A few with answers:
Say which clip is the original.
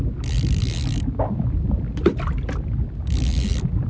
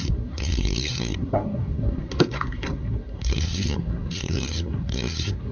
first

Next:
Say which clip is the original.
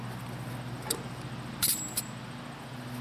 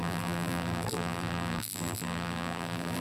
first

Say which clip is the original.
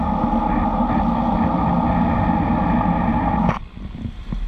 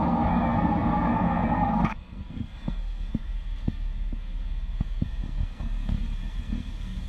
first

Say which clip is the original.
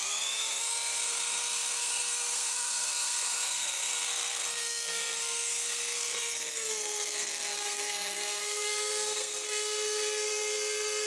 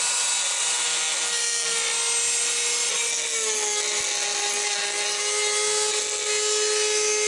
second